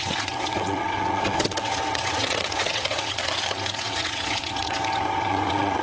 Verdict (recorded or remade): remade